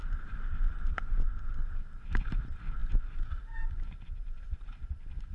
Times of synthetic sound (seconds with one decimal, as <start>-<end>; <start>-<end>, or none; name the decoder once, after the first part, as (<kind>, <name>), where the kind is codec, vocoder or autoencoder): none